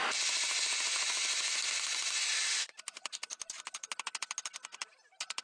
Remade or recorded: recorded